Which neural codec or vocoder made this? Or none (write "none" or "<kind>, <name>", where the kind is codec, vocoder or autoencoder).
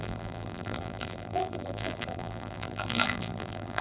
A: vocoder, BigVGAN v2